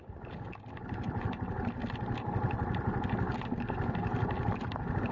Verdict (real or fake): real